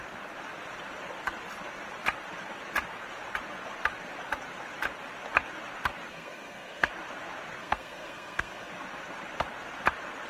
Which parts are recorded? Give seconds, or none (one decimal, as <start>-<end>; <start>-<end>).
0.0-6.1; 6.9-7.6; 8.7-10.3